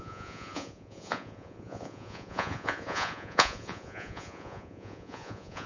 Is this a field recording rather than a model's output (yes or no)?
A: no